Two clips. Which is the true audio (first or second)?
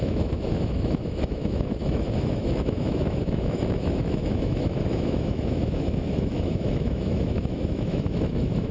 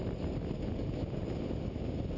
second